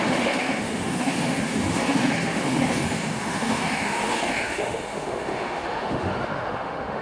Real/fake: fake